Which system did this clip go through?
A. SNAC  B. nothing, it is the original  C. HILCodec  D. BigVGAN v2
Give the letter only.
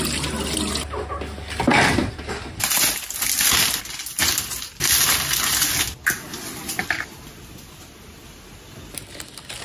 B